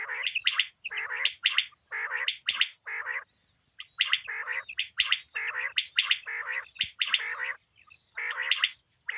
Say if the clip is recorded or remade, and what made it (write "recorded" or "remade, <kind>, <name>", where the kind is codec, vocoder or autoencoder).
recorded